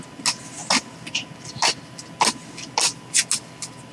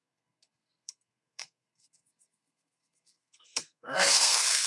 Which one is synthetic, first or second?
second